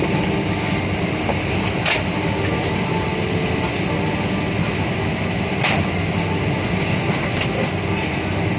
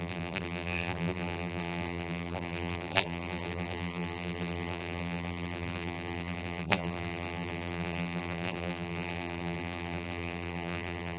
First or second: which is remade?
second